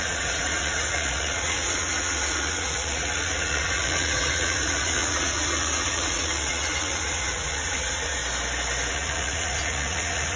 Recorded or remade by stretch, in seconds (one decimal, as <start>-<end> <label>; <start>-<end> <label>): 0.0-8.2 remade; 8.2-8.9 recorded; 8.9-10.4 remade